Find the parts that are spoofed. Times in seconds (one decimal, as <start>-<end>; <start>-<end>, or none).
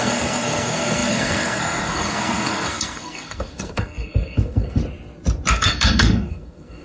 0.0-4.8; 5.5-6.8